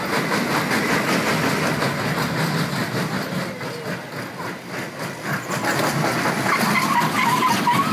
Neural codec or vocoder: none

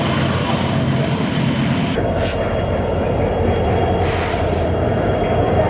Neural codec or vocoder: vocoder, BigVGAN v2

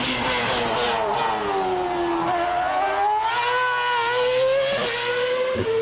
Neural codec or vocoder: none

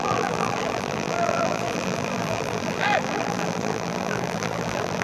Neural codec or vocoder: vocoder, BigVGAN v2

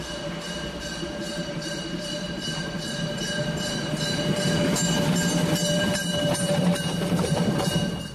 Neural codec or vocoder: vocoder, BigVGAN v2